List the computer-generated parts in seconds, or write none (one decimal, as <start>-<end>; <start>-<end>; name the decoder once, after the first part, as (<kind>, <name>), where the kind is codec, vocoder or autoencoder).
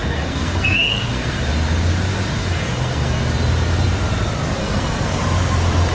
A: 0.0-1.4 (codec, SNAC); 2.4-3.2; 4.6-5.2